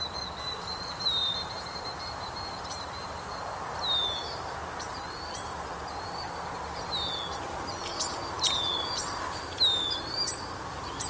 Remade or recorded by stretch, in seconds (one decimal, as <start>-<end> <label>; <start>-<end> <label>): 0.0-11.1 recorded